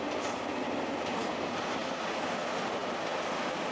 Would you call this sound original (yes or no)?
yes